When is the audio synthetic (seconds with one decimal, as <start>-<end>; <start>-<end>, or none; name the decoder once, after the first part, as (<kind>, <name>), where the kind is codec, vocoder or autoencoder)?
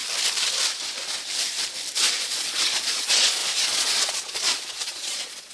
2.2-5.5 (vocoder, Vocos)